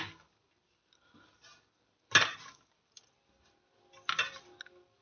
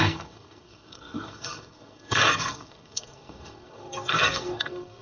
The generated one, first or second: second